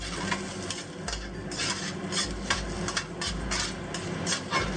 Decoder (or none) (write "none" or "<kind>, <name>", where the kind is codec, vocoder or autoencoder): none